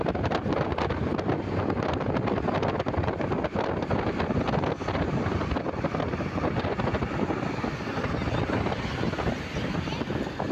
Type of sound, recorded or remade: recorded